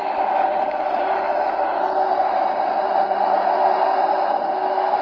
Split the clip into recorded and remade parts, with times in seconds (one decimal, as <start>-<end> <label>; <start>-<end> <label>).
0.0-5.0 recorded